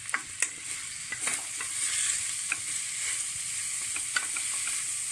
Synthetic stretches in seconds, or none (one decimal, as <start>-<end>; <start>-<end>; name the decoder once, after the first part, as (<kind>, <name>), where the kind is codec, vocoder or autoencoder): none